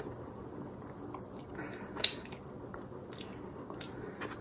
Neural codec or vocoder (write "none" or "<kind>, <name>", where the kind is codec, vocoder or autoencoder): none